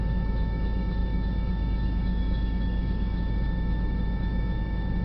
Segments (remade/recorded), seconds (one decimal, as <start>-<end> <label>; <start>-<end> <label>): 0.0-5.0 remade